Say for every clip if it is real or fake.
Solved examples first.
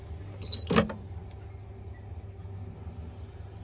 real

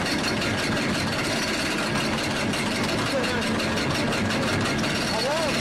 real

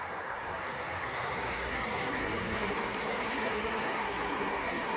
fake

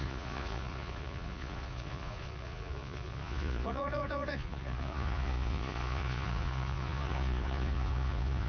fake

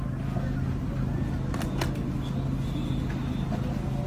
real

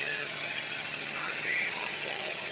fake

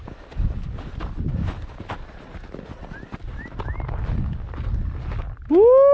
real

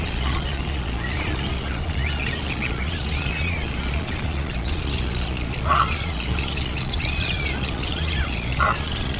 fake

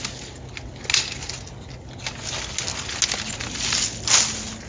real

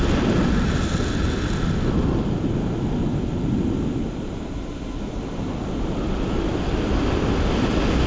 real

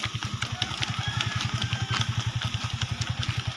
real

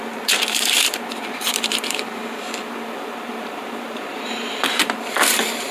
fake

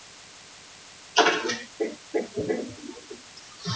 real